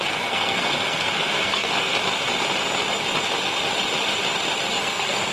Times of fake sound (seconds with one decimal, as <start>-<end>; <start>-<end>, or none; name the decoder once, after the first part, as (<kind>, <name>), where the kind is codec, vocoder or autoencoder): 0.0-1.9 (codec, SNAC); 4.7-5.3